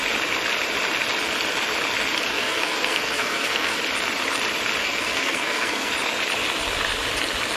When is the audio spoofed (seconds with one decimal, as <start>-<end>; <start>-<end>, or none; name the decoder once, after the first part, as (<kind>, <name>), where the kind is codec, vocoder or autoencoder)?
2.3-3.8 (codec, SNAC); 4.8-5.9